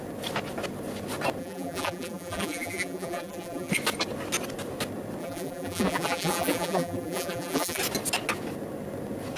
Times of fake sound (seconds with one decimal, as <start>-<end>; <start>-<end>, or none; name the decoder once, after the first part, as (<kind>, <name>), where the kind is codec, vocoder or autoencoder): 1.4-3.7 (vocoder, BigVGAN v2); 5.2-7.8